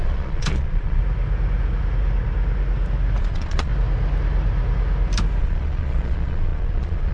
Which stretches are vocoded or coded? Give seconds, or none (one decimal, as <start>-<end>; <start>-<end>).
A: 0.0-1.0; 3.2-3.7; 5.4-7.1